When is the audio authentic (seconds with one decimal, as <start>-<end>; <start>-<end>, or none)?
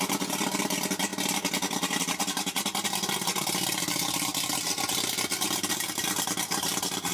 1.1-2.0; 4.3-5.7